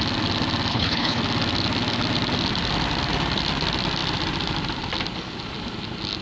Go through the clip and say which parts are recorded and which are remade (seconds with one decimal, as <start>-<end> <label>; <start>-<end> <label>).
0.0-0.7 recorded; 0.7-1.2 remade; 1.2-6.2 recorded